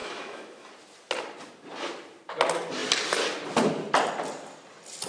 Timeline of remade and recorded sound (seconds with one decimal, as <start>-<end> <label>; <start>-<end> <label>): 0.0-0.7 remade; 0.7-5.1 recorded